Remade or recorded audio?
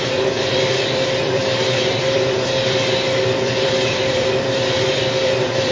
remade